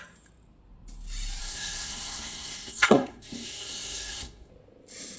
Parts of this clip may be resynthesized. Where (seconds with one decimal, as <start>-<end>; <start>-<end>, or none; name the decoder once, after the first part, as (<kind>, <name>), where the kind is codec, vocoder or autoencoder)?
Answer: 1.4-4.5 (codec, SNAC)